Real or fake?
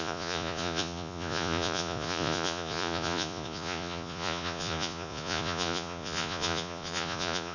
fake